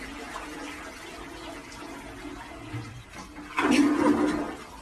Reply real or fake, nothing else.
real